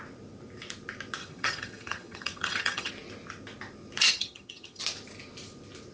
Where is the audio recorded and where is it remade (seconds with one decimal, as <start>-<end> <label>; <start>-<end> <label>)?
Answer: 0.0-1.2 recorded; 1.2-2.9 remade; 2.9-4.1 recorded; 4.1-4.8 remade; 4.8-5.9 recorded